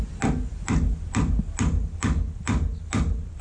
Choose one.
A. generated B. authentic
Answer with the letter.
B